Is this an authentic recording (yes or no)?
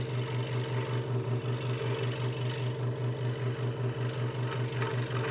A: yes